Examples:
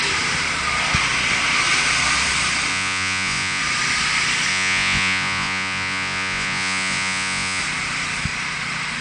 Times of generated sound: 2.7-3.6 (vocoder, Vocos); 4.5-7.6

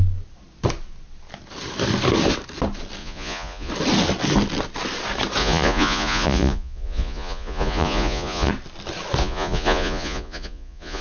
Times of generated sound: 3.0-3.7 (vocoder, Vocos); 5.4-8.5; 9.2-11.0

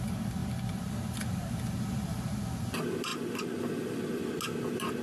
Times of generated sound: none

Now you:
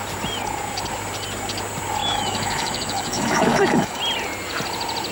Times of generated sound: 2.0-4.0 (autoencoder, DAC-VAE)

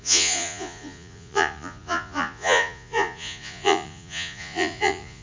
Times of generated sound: 0.0-5.2 (vocoder, Vocos)